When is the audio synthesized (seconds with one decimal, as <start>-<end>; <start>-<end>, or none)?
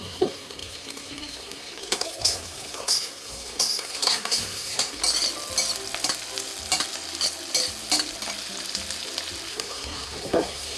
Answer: 0.0-5.0; 9.5-10.8